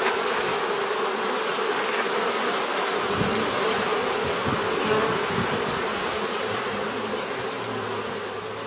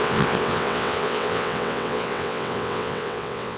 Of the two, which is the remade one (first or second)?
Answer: second